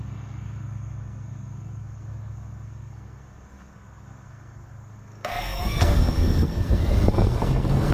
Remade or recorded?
remade